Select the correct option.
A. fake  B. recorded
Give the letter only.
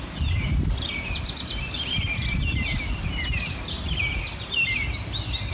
B